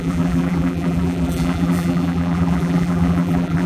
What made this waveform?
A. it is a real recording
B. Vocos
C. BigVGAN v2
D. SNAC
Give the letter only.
C